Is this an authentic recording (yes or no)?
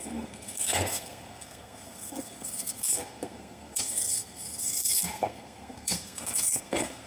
no